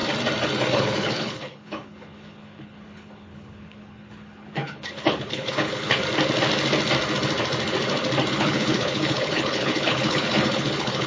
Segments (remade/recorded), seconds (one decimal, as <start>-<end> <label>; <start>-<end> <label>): 0.0-0.7 recorded; 0.7-6.0 remade; 6.0-8.3 recorded; 8.3-11.1 remade